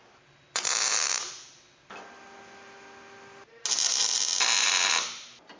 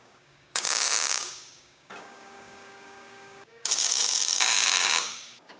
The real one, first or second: first